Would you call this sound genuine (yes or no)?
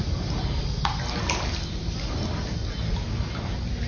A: yes